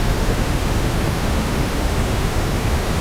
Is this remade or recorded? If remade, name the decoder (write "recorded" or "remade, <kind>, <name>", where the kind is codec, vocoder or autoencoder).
remade, autoencoder, DAC-VAE